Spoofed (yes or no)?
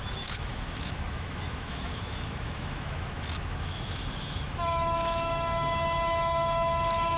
yes